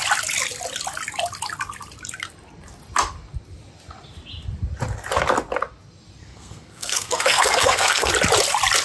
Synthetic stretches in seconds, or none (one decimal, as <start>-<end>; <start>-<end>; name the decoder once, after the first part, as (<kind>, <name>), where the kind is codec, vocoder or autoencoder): 6.2-8.1 (codec, SNAC)